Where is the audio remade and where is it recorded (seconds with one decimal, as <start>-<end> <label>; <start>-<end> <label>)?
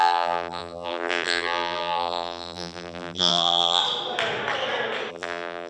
0.0-3.8 remade; 3.8-5.1 recorded; 5.1-5.7 remade